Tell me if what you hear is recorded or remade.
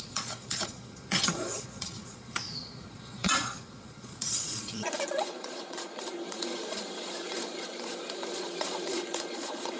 remade